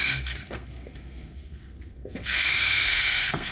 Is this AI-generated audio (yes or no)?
yes